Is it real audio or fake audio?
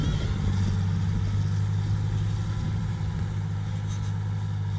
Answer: real